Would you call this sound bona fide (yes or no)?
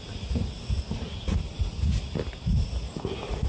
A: yes